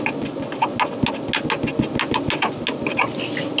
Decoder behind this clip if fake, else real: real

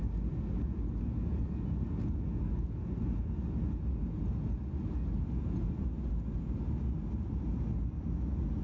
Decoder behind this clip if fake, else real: real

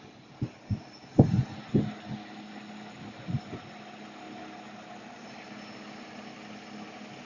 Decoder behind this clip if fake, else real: real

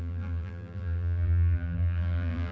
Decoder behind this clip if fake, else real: fake, vocoder, BigVGAN v2